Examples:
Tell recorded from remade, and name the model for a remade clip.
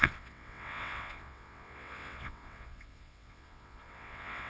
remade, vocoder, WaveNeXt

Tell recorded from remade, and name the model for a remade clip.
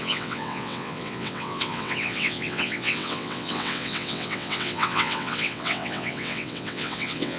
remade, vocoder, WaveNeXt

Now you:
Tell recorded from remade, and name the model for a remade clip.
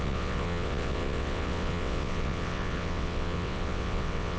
remade, vocoder, WaveNeXt